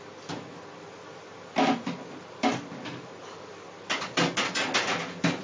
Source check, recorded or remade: recorded